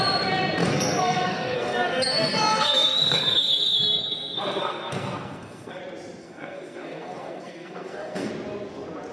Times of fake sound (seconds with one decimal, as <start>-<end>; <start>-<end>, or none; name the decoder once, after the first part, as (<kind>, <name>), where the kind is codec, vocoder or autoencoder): 0.6-5.8 (codec, SNAC); 6.2-8.3